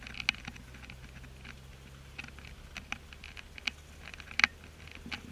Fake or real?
real